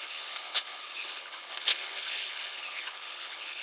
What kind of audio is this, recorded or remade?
remade